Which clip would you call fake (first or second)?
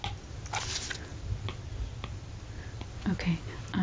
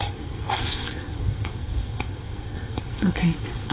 second